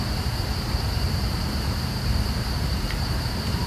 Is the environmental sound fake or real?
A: fake